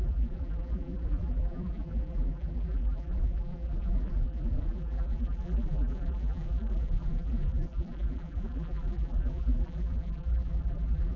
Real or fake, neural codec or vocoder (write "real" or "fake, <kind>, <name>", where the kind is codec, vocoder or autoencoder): fake, vocoder, BigVGAN v2